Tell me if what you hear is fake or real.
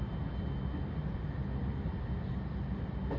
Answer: real